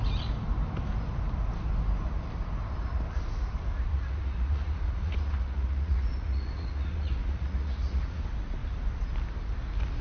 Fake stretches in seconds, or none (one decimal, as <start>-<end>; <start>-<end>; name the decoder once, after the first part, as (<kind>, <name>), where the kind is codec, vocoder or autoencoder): 3.9-8.2 (vocoder, Vocos)